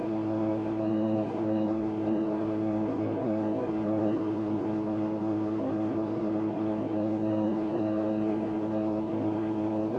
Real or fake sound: fake